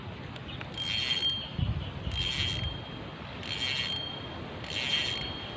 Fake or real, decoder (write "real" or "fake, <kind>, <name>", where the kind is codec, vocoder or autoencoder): real